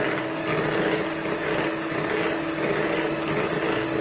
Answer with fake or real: real